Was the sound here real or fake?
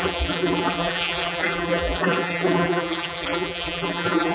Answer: fake